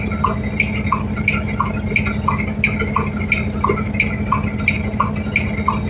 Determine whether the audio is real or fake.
real